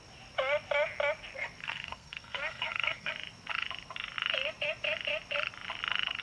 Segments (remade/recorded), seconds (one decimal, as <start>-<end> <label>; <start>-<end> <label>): 0.0-1.6 recorded; 1.6-3.1 remade; 3.1-6.2 recorded